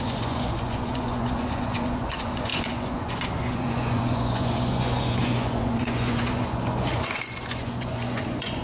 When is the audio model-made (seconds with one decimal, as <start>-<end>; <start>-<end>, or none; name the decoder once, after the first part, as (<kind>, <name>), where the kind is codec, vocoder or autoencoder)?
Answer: 0.0-8.6 (vocoder, Vocos)